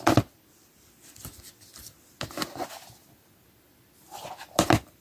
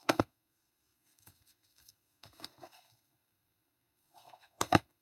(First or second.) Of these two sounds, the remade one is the second